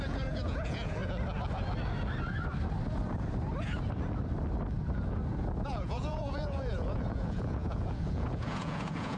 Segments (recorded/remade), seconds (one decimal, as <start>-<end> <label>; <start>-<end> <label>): 0.0-1.0 remade; 1.0-5.6 recorded; 5.6-9.2 remade